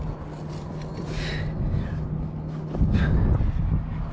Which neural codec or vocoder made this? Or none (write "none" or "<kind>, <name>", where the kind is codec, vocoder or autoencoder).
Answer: none